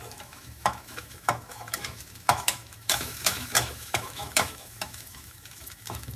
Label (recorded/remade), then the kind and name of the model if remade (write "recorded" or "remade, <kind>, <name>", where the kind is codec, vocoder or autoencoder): remade, autoencoder, DAC-VAE